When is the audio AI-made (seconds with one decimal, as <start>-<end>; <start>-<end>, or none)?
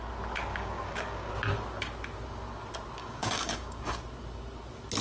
0.5-1.3; 3.0-4.0